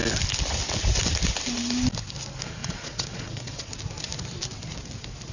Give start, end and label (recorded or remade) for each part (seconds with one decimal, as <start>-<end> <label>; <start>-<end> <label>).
0.0-2.6 recorded; 2.6-3.7 remade; 3.7-5.3 recorded